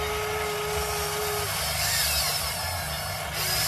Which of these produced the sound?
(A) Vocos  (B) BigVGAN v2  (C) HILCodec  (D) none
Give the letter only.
D